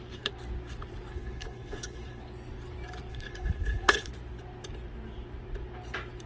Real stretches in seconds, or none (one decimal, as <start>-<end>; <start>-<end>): 0.0-1.1; 2.2-3.1; 4.1-6.3

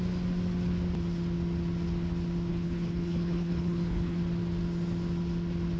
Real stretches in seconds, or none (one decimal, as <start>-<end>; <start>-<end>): 0.0-2.5; 4.2-5.8

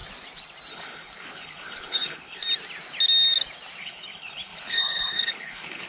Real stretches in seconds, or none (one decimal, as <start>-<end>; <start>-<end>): 0.0-0.7; 2.4-3.8

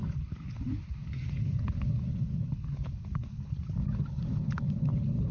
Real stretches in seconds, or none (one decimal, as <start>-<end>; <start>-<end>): none

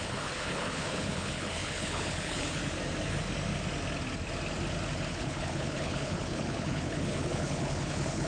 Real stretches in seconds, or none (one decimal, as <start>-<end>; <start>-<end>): 2.6-5.1

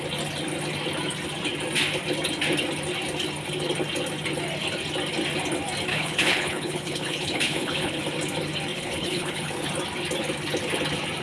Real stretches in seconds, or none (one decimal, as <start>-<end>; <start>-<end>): 0.0-5.9; 8.0-8.7; 9.7-11.2

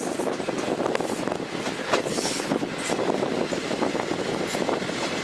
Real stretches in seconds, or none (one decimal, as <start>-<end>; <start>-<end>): 0.0-1.8; 2.7-5.2